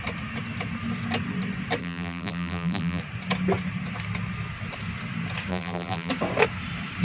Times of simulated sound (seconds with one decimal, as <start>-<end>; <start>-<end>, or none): 1.8-3.0; 5.5-6.1